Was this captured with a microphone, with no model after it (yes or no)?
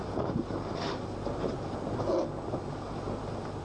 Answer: yes